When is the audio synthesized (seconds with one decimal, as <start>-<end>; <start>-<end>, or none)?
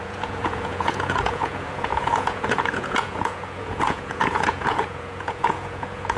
0.0-6.2